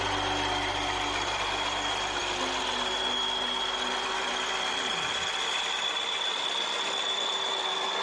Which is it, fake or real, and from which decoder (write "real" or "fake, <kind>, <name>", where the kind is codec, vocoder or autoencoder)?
fake, vocoder, BigVGAN v2